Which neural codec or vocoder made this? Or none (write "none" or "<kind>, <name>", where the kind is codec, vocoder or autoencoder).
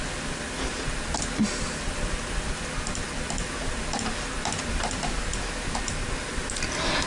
none